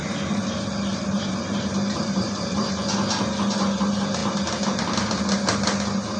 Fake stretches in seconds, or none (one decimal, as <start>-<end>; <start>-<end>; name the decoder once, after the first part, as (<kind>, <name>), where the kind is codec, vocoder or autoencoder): 0.9-2.6 (vocoder, BigVGAN v2)